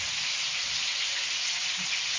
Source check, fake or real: real